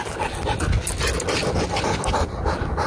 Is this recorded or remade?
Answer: recorded